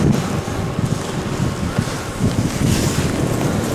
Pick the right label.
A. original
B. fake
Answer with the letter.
A